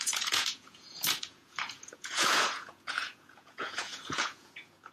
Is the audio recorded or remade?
remade